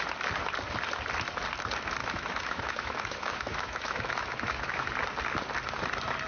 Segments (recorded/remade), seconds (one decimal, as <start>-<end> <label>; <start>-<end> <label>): 0.0-2.0 recorded; 2.0-4.9 remade; 4.9-6.3 recorded